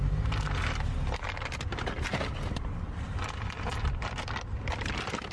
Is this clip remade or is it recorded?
recorded